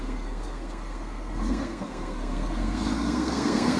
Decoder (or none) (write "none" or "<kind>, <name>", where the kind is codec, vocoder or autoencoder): codec, SNAC